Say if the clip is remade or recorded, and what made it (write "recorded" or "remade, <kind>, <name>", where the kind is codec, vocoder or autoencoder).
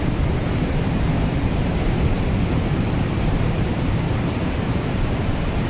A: remade, vocoder, BigVGAN v2